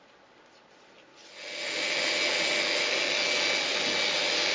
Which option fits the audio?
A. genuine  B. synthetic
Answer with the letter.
A